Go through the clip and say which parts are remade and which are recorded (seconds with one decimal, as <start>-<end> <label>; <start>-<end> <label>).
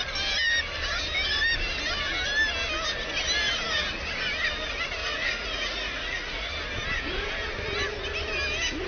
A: 0.0-5.0 recorded; 5.0-6.5 remade; 6.5-8.9 recorded